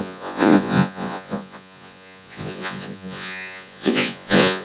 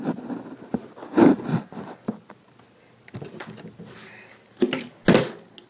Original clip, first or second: second